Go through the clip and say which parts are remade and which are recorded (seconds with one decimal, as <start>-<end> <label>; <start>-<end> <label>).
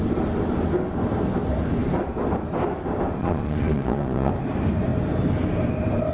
0.0-3.2 recorded; 3.2-4.3 remade; 4.3-6.1 recorded